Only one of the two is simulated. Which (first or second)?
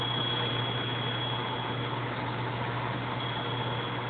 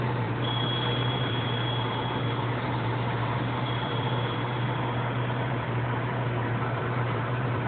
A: second